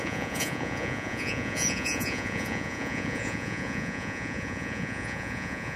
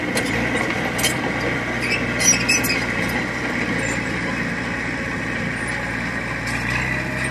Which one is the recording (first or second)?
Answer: second